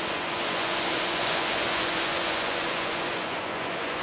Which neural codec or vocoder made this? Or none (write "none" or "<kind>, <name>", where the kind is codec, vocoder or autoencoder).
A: vocoder, Vocos